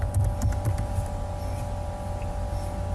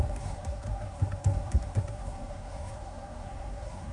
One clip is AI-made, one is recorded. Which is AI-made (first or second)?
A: second